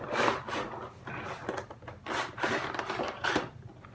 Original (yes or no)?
yes